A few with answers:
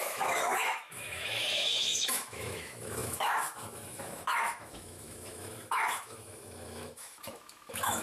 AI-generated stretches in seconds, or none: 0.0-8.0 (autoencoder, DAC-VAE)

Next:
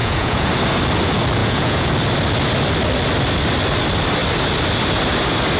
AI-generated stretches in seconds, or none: 0.0-0.5 (vocoder, Vocos); 1.4-1.9

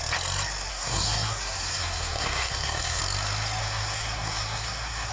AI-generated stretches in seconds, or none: 0.7-3.0 (codec, SNAC); 3.6-5.1

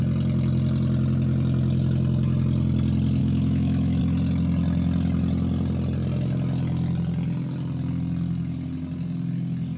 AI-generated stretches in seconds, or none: 3.2-4.0 (autoencoder, DAC-VAE)

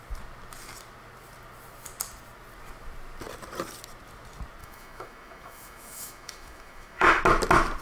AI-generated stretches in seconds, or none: 4.6-7.2 (autoencoder, DAC-VAE)

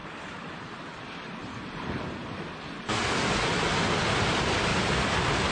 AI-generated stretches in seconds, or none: 0.0-3.3 (vocoder, BigVGAN v2); 4.7-5.5